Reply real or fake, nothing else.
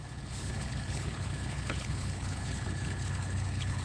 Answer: fake